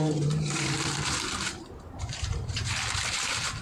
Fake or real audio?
fake